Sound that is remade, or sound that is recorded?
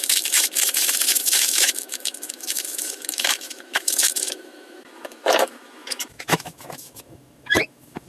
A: remade